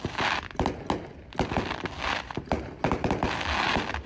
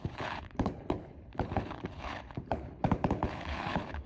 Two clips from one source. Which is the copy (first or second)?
second